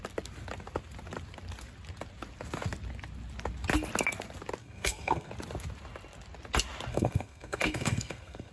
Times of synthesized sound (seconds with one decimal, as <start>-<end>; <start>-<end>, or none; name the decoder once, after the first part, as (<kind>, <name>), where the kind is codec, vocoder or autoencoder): 4.6-5.3 (codec, SNAC); 6.9-8.5